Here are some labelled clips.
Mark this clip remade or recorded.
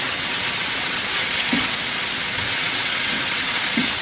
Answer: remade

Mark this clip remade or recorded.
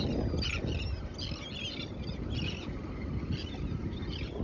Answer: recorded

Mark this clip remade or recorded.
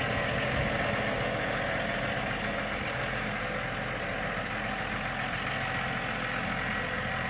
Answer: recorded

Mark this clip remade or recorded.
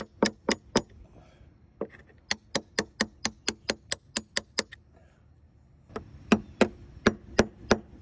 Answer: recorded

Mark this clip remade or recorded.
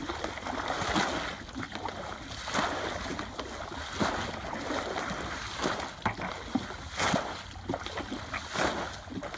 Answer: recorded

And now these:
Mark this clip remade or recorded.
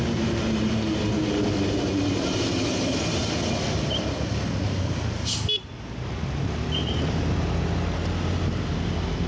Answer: recorded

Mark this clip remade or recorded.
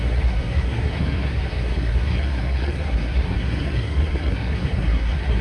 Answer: remade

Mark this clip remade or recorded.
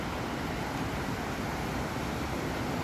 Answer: recorded